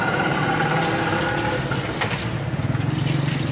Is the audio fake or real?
real